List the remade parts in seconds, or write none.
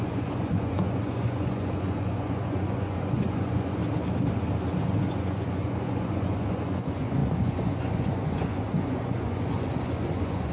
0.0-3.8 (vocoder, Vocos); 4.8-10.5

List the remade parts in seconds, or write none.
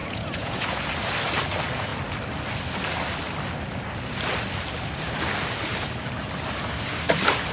0.0-0.8 (vocoder, Vocos)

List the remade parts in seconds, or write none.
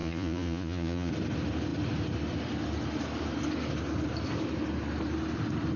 0.0-1.1 (vocoder, Vocos)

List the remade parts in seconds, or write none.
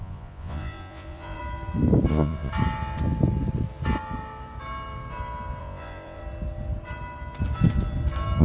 0.0-1.4 (vocoder, Vocos); 2.1-2.5; 5.6-6.2